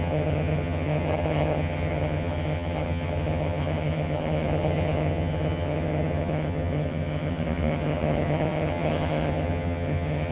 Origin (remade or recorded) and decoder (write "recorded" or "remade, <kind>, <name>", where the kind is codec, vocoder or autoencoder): remade, vocoder, HiFi-GAN